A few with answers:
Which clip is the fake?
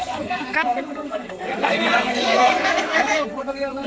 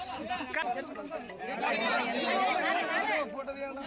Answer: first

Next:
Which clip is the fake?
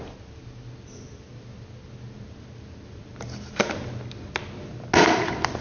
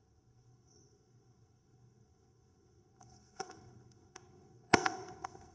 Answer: second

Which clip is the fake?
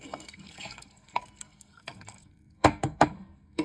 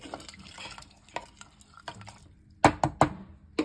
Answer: first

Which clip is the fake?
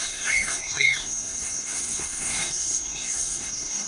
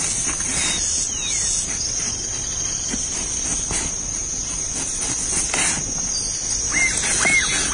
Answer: first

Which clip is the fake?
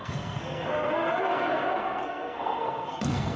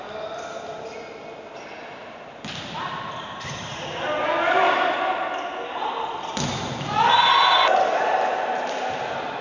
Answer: first